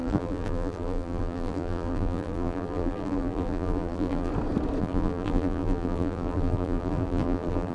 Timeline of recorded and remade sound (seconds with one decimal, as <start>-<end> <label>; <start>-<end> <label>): 0.0-4.3 remade; 4.3-4.8 recorded; 4.8-7.7 remade